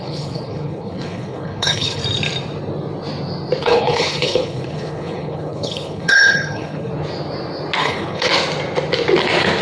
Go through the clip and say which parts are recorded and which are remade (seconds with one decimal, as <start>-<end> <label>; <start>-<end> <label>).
0.0-2.0 remade; 2.0-3.6 recorded; 3.6-6.9 remade; 6.9-7.8 recorded; 7.8-8.3 remade; 8.3-9.6 recorded